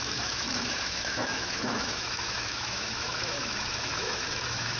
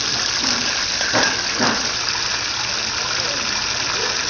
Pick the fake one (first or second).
first